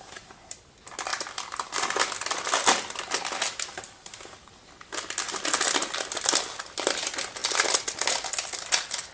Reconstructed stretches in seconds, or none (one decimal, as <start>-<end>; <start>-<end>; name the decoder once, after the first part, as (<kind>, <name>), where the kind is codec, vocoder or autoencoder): none